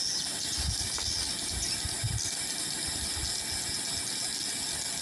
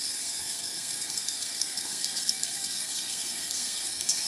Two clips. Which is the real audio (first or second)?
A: first